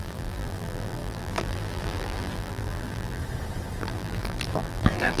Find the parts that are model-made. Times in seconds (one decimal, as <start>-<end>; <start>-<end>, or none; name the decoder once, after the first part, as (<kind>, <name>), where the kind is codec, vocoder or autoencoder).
0.0-3.2 (vocoder, BigVGAN v2); 3.8-5.2